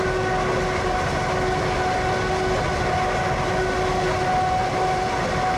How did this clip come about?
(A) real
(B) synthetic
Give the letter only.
A